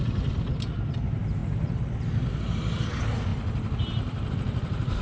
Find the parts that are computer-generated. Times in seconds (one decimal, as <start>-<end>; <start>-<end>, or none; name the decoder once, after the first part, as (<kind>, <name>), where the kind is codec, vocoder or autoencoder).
none